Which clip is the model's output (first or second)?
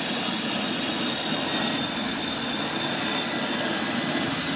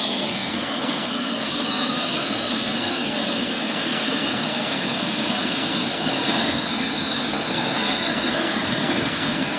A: second